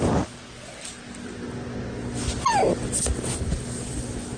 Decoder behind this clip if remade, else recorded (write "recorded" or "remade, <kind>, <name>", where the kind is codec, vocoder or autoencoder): recorded